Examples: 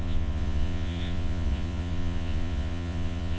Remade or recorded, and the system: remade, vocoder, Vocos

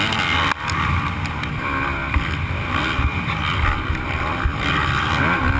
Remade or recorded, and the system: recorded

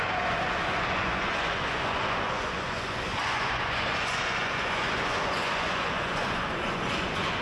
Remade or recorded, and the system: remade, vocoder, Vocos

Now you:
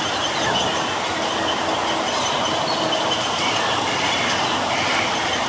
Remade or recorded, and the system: recorded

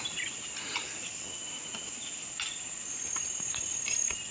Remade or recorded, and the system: recorded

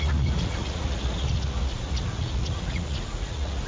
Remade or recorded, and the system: remade, vocoder, Vocos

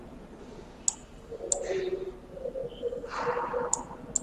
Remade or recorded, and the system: recorded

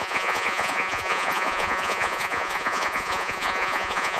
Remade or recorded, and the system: remade, vocoder, Vocos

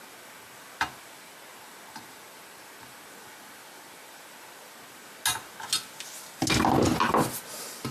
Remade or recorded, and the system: recorded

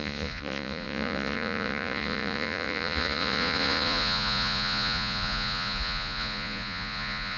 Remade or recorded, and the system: remade, vocoder, Vocos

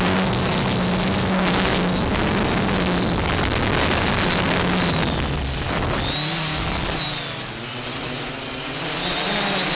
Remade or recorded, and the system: recorded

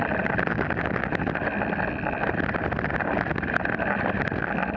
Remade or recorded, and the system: recorded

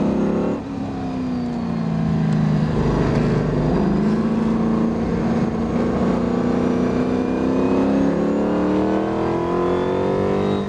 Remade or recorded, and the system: recorded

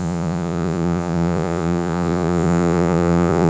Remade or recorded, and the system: remade, vocoder, Vocos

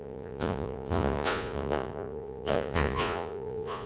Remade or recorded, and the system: remade, vocoder, Vocos